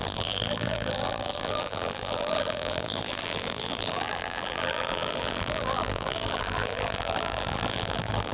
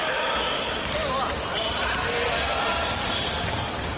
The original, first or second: second